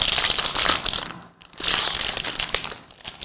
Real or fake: real